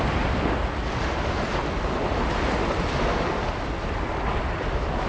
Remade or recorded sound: recorded